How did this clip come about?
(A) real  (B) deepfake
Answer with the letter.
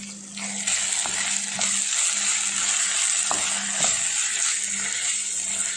A